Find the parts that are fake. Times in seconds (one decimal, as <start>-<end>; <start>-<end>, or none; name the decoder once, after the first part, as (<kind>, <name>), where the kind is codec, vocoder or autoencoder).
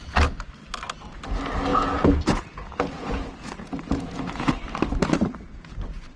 1.7-4.5 (vocoder, Vocos)